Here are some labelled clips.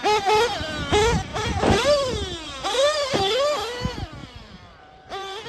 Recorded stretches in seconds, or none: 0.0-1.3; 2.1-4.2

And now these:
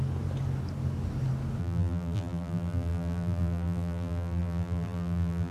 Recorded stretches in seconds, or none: 0.0-1.6

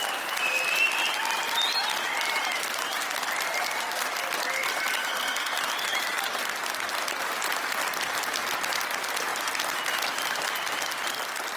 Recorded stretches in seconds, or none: 0.0-5.0; 5.6-11.6

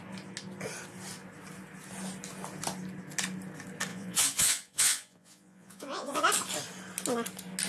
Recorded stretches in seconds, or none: 0.0-3.9; 6.2-7.7

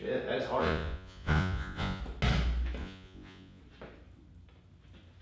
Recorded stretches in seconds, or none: 0.0-0.6; 2.0-2.8; 3.6-5.2